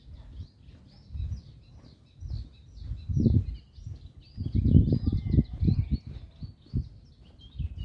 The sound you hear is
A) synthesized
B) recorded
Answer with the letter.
B